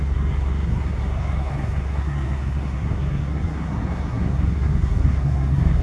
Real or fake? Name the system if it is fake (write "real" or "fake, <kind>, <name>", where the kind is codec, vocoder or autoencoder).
fake, codec, SNAC